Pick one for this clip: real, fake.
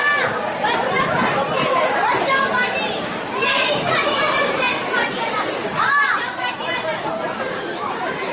fake